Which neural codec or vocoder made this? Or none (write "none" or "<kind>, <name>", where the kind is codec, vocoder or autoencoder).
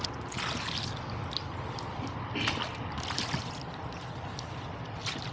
none